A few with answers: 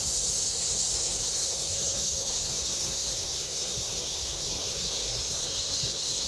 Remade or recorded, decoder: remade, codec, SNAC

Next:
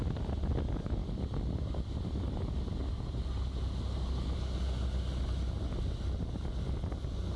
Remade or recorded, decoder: recorded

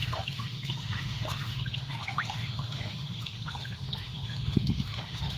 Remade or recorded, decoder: remade, autoencoder, DAC-VAE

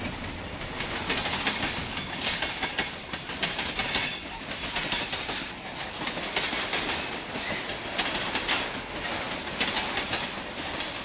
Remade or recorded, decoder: recorded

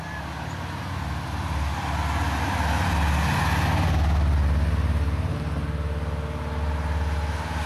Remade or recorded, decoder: recorded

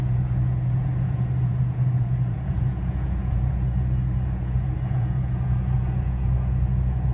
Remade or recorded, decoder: remade, vocoder, Vocos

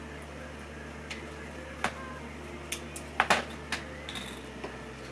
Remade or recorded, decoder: recorded